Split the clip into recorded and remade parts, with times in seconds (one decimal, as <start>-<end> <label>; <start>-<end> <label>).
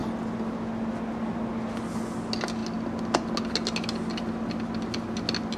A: 0.0-5.6 recorded